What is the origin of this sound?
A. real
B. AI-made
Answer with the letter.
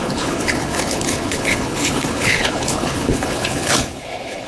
B